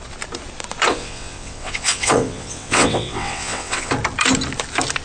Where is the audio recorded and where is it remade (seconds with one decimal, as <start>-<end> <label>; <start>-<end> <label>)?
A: 0.0-0.9 recorded; 0.9-3.9 remade; 3.9-5.0 recorded

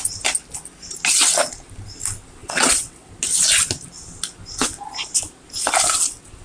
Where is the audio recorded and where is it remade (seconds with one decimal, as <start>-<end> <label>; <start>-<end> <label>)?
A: 0.0-2.4 recorded; 2.4-3.1 remade; 3.1-6.4 recorded